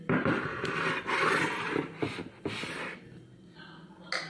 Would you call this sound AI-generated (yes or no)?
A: no